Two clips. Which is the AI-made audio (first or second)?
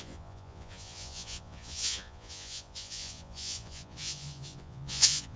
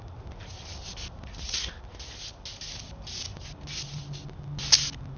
first